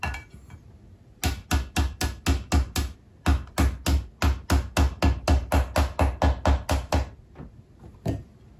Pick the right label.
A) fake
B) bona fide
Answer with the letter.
B